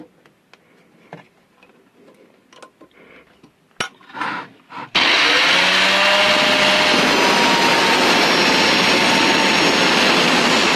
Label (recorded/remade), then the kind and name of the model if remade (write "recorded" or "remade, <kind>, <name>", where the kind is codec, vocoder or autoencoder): recorded